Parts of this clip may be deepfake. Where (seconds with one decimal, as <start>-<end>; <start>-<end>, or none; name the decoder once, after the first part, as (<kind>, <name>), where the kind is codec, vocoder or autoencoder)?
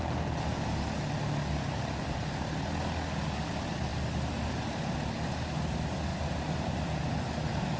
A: 6.1-6.7 (vocoder, BigVGAN v2)